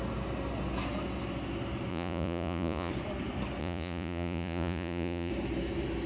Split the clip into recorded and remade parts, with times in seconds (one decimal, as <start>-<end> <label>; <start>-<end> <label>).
0.0-1.9 recorded; 1.9-2.9 remade; 2.9-3.6 recorded; 3.6-5.3 remade; 5.3-6.1 recorded